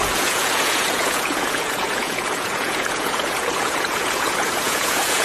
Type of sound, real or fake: fake